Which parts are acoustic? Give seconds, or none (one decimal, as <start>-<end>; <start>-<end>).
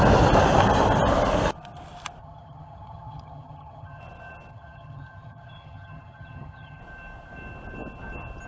0.0-2.2; 4.0-4.5; 6.8-8.5